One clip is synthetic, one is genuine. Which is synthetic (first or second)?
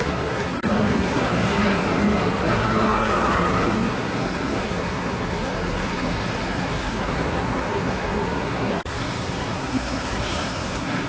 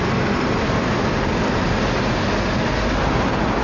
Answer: first